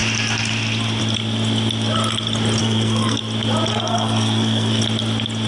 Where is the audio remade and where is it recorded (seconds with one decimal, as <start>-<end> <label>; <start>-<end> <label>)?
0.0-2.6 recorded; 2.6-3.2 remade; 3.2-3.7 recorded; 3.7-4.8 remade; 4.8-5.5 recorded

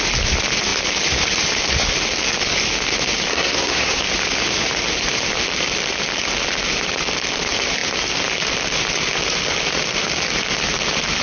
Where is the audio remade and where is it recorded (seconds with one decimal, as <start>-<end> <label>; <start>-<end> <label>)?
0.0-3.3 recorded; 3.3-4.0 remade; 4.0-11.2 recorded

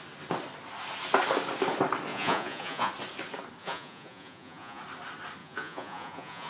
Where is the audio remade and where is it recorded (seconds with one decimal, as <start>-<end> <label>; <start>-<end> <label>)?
0.0-2.1 recorded; 2.1-2.9 remade; 2.9-3.6 recorded; 3.6-4.8 remade; 4.8-5.4 recorded; 5.4-6.5 remade